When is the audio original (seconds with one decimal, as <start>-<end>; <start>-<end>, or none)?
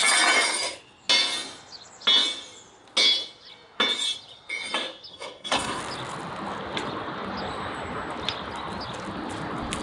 0.0-5.1; 5.8-9.8